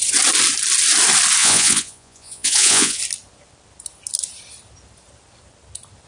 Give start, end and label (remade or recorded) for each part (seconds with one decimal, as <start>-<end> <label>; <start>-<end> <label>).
0.0-1.4 recorded; 1.4-3.0 remade; 3.0-6.1 recorded